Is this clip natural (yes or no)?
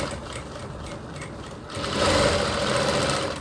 yes